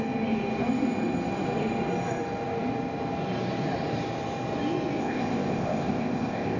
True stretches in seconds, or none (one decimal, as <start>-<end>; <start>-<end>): 0.0-5.0

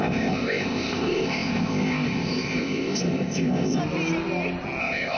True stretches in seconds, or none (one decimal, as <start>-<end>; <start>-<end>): 3.8-4.8

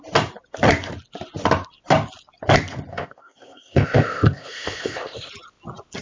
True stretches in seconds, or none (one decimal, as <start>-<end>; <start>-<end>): 0.0-2.9; 5.3-6.0

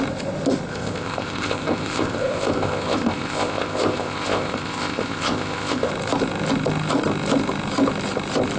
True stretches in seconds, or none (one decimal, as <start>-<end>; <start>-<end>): 0.0-0.7; 5.9-8.6

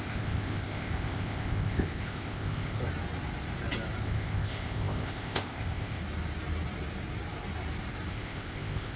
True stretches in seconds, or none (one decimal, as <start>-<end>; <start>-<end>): 2.8-4.0; 6.0-8.1

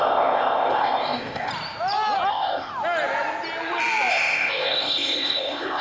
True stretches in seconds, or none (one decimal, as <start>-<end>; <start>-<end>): 1.5-2.3; 2.7-4.1